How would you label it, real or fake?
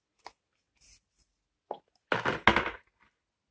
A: real